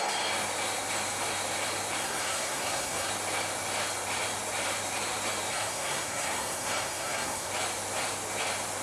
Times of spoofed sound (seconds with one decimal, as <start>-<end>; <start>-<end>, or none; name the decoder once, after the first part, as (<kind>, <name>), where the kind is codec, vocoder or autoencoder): 2.0-3.1 (codec, SNAC); 5.5-7.5